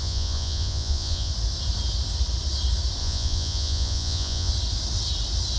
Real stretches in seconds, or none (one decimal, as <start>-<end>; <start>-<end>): 1.3-3.0; 4.5-5.6